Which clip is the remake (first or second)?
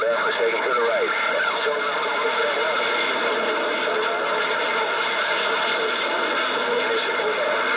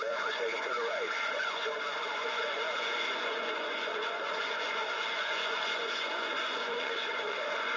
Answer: second